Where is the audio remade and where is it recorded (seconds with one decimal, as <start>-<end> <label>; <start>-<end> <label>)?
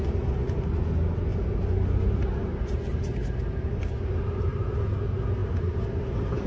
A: 0.0-6.5 recorded